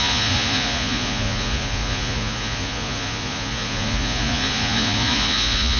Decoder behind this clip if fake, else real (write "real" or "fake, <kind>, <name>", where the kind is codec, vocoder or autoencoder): fake, vocoder, Vocos